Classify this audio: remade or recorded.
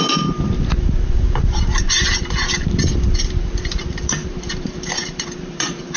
remade